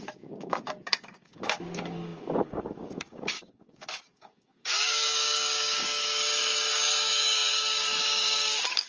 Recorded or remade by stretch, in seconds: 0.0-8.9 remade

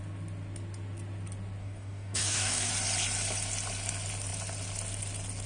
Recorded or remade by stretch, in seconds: 0.0-1.6 recorded; 1.6-2.7 remade; 2.7-5.5 recorded

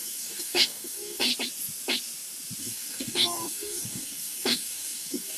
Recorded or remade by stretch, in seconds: 0.0-1.3 remade; 1.3-2.6 recorded; 2.6-5.4 remade

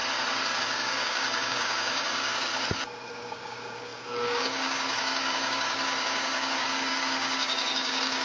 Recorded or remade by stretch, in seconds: 0.0-0.6 recorded; 0.6-2.5 remade; 2.5-3.1 recorded; 3.1-8.2 remade

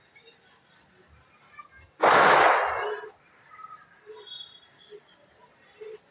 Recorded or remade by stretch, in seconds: 0.0-6.1 recorded

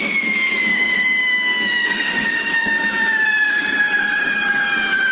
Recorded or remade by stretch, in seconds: 0.0-0.7 recorded; 0.7-3.8 remade; 3.8-5.1 recorded

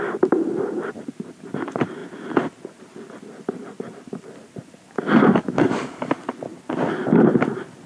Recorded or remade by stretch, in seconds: 0.0-5.2 recorded; 5.2-6.1 remade; 6.1-7.9 recorded